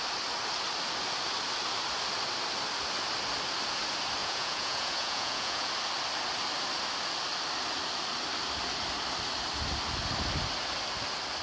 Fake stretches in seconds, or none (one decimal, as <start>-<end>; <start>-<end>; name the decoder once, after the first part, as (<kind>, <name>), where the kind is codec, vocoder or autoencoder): 4.2-5.7 (vocoder, Vocos)